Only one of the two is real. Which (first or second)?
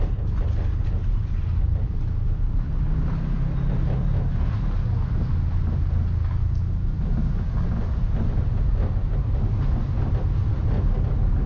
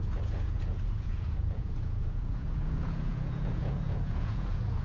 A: first